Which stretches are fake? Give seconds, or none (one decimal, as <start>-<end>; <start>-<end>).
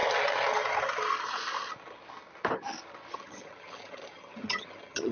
3.1-5.1